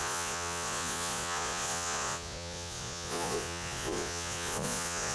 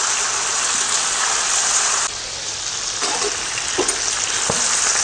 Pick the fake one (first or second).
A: first